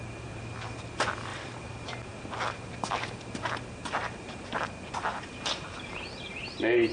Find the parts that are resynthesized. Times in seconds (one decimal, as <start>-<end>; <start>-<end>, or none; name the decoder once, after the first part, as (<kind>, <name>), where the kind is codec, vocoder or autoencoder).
1.3-2.2 (vocoder, BigVGAN v2); 3.8-6.9

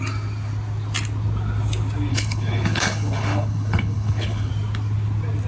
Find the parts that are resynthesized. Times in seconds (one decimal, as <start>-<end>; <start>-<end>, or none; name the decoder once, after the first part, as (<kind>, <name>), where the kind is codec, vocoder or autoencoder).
2.1-4.5 (codec, HILCodec)